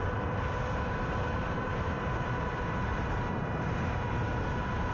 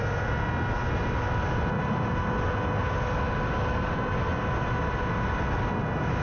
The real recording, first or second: second